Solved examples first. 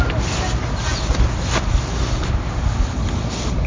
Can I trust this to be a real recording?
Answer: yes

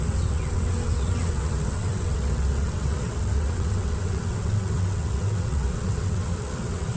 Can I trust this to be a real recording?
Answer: no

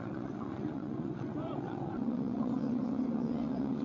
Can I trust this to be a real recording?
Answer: no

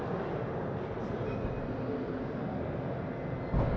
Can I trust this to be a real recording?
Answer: yes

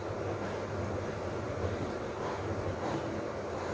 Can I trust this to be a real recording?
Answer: yes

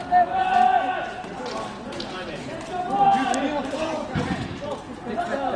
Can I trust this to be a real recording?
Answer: yes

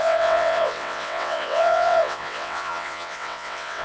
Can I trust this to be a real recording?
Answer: no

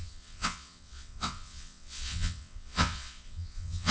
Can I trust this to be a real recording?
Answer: no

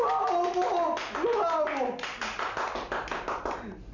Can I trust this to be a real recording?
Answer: yes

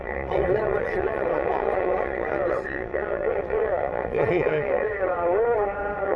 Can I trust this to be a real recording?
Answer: no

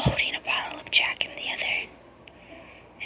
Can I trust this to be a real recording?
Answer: yes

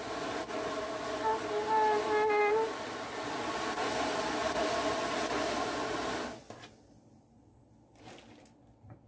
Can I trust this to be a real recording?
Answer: yes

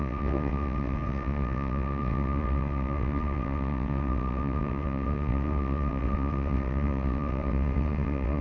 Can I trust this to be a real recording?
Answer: no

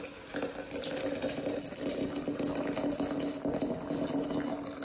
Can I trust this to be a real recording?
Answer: yes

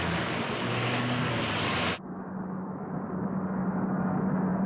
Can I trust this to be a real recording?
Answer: yes